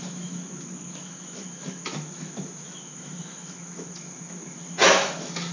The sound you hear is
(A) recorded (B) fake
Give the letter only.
B